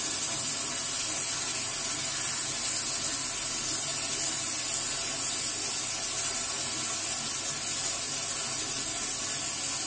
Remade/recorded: recorded